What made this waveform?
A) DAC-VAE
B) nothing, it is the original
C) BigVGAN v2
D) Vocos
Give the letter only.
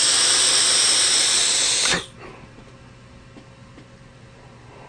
B